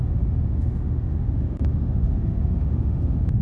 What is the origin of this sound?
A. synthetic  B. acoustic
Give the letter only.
A